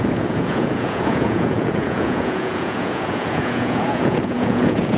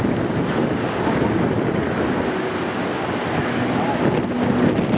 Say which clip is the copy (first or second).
first